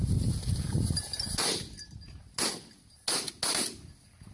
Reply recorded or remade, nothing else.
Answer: recorded